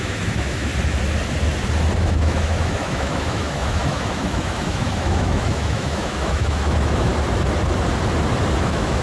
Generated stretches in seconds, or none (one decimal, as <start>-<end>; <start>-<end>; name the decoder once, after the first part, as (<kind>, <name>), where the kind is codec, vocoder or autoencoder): 0.0-0.7 (autoencoder, DAC-VAE); 2.0-7.1; 8.6-9.0